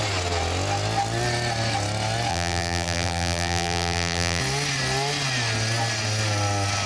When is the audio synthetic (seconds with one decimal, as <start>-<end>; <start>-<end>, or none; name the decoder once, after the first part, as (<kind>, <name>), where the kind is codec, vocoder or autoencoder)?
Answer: 2.3-4.4 (vocoder, BigVGAN v2)